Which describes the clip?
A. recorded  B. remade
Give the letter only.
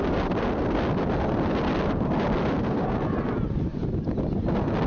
A